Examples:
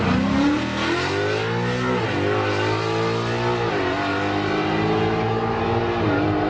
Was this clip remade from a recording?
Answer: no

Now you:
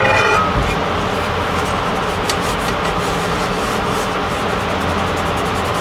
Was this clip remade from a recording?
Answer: no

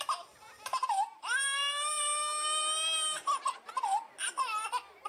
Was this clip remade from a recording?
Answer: no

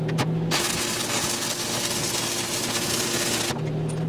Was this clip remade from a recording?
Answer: no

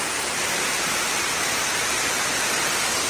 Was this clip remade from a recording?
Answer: yes